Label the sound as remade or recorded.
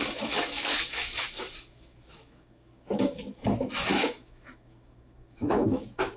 remade